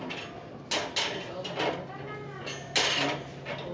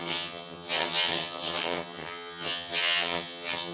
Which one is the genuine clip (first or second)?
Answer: first